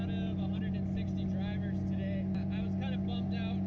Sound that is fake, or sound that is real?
real